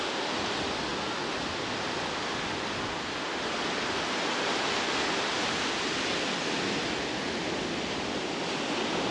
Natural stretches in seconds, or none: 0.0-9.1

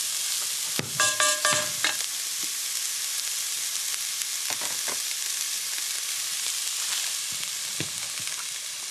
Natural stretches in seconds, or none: 0.0-8.9

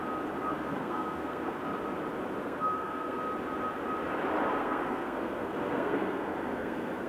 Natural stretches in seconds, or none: 0.0-0.4; 1.6-2.4; 3.2-4.5